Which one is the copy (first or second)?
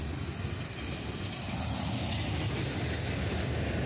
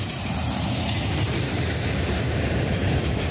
second